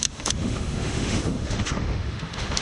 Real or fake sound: fake